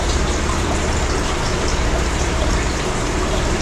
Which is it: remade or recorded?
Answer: remade